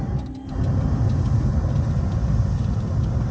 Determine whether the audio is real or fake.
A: real